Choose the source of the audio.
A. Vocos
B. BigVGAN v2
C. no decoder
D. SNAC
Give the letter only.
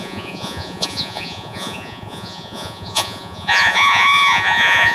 A